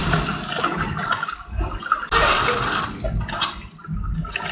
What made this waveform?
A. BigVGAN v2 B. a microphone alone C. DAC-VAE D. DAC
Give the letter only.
B